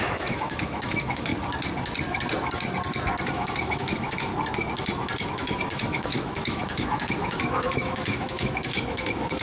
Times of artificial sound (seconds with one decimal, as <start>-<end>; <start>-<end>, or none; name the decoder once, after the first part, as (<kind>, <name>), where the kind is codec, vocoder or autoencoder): 0.0-1.3 (autoencoder, DAC-VAE); 3.3-4.3; 5.3-9.4